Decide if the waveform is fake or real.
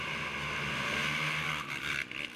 real